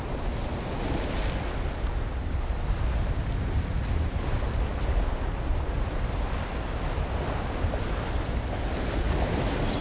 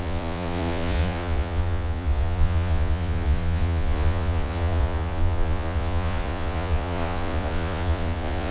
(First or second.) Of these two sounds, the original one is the first